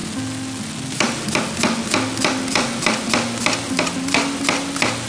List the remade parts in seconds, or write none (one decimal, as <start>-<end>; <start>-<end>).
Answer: none